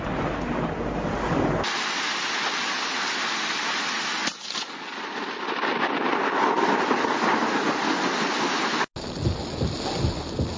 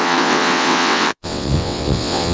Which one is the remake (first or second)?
second